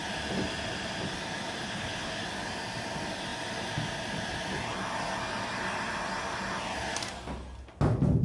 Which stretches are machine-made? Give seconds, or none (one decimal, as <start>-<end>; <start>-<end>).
1.6-2.1